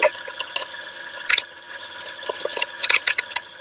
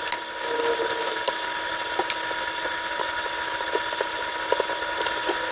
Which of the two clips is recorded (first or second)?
second